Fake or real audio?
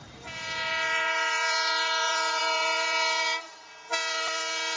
fake